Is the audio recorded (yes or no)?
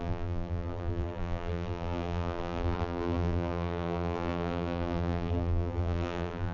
no